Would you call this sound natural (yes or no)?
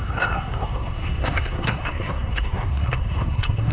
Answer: no